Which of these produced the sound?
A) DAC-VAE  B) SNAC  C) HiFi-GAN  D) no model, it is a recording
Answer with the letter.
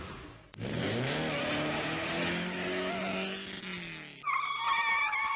D